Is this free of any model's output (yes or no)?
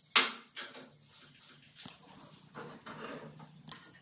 yes